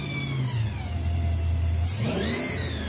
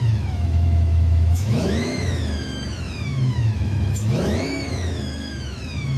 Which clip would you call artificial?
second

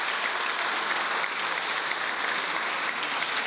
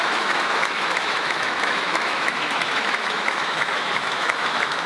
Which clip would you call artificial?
second